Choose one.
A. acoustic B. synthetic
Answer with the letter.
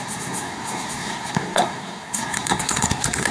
B